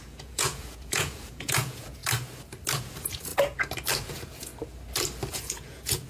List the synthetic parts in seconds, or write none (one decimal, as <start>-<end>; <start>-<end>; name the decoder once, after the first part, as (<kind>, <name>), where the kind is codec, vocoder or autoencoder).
0.0-2.0 (vocoder, Vocos); 2.8-3.3; 4.1-4.5; 5.3-6.1